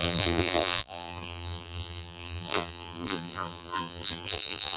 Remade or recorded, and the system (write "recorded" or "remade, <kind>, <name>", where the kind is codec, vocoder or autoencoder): remade, vocoder, BigVGAN v2